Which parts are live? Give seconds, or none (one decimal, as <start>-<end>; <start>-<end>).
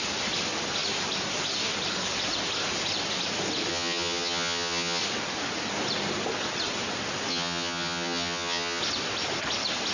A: 0.0-3.7; 5.0-7.3; 8.8-9.9